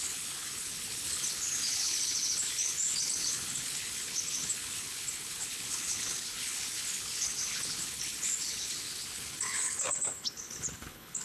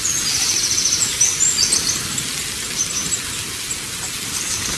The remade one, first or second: first